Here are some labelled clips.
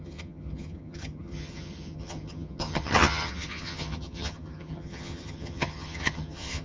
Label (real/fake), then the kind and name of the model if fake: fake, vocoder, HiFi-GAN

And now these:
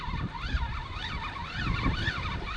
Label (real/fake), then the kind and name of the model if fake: real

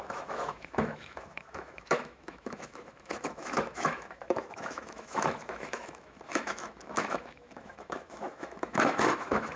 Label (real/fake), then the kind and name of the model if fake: fake, autoencoder, DAC-VAE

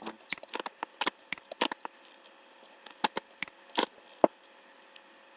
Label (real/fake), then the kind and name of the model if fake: real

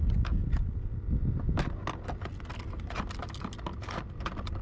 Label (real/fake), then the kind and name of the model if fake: real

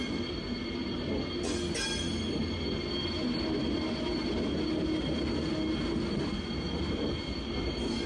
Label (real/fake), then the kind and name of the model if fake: real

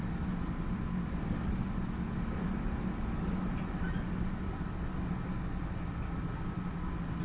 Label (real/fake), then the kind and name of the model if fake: real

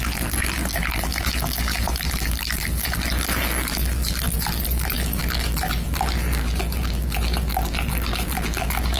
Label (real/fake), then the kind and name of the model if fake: fake, vocoder, BigVGAN v2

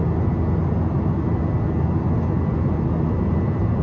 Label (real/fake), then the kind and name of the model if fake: real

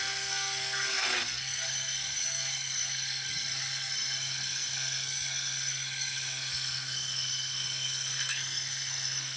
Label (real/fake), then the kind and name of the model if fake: fake, codec, SNAC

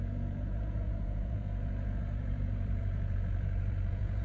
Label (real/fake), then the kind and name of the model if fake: fake, vocoder, Vocos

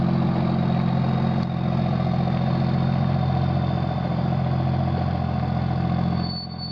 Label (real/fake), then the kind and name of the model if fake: real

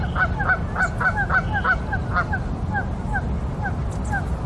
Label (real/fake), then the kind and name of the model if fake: real